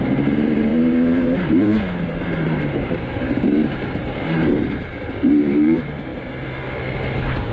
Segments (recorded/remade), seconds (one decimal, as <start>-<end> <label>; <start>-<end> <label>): 0.0-6.1 remade; 6.1-7.5 recorded